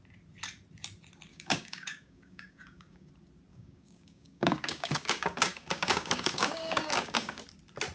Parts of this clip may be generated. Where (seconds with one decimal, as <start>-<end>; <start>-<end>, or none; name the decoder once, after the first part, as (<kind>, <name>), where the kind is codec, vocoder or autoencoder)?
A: 1.3-3.1 (codec, DAC); 3.5-7.4